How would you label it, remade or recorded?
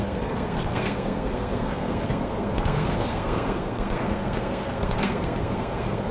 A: remade